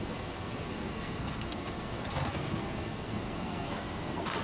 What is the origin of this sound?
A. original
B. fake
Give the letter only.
B